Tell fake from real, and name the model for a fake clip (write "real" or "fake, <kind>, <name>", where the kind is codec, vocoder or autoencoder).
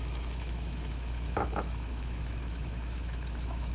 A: fake, autoencoder, DAC-VAE